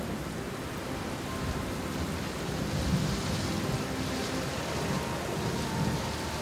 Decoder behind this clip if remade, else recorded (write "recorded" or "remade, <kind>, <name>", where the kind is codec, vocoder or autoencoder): recorded